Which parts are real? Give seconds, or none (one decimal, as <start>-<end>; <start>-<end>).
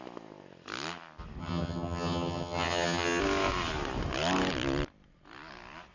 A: 0.0-1.4; 3.2-5.9